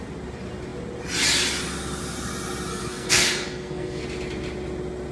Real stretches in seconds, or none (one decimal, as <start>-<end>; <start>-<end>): 0.0-2.7; 4.0-5.1